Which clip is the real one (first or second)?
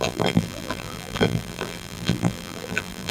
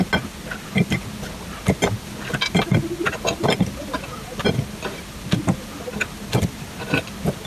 second